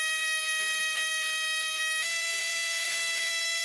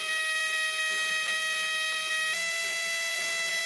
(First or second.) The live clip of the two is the second